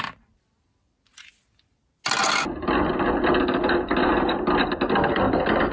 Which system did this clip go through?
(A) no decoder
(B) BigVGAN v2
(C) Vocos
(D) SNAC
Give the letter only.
A